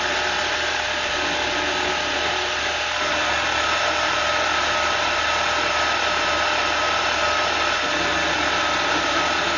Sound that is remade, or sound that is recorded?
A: recorded